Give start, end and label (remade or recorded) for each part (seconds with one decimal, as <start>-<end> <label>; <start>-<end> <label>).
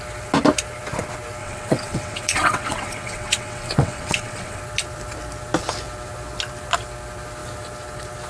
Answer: 0.0-1.4 recorded; 1.4-4.6 remade; 4.6-8.3 recorded